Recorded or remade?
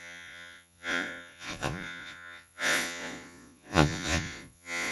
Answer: remade